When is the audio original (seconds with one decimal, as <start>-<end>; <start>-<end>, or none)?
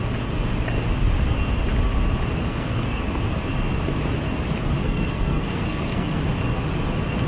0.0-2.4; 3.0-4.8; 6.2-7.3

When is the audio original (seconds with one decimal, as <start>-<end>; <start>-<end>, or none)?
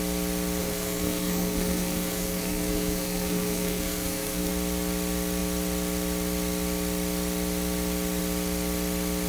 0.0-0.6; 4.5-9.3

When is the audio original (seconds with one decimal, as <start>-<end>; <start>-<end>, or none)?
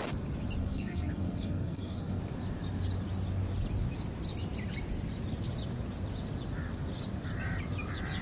0.0-0.6; 2.2-8.2